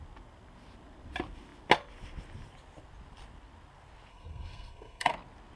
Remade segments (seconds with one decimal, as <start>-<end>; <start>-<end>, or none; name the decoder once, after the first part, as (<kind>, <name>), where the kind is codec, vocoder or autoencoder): 4.1-5.1 (codec, SNAC)